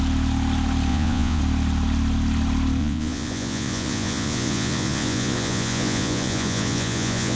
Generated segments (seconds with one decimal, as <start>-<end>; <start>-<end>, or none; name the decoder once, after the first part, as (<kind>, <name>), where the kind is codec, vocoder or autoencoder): 0.9-1.4 (vocoder, Vocos); 2.8-7.4